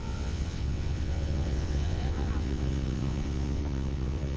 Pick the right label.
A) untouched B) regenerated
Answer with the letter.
B